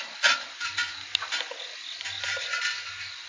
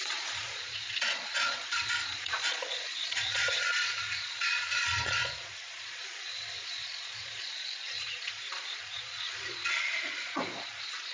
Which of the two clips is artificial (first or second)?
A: second